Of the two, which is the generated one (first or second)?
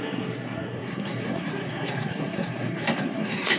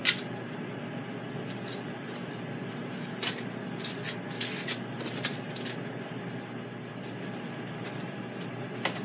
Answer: first